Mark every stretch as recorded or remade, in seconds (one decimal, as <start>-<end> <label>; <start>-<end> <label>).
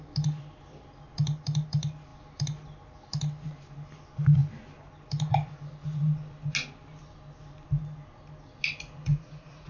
0.0-9.1 recorded; 9.1-9.7 remade